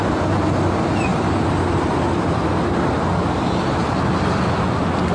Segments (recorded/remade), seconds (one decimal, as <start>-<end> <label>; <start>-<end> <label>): 0.0-1.1 recorded; 1.1-2.0 remade; 2.0-5.1 recorded